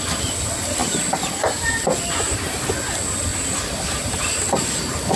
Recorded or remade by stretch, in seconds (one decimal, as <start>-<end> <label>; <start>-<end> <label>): 0.0-3.3 recorded; 3.3-4.1 remade; 4.1-5.2 recorded